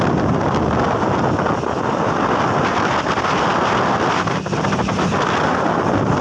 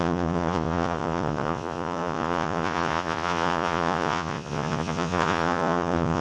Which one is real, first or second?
first